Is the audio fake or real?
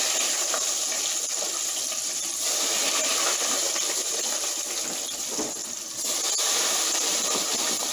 fake